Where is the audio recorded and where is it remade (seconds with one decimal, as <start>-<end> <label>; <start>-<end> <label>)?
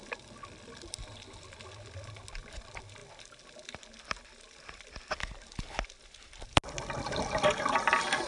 0.0-8.3 recorded